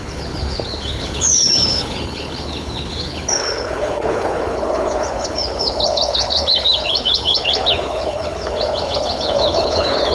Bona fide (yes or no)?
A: no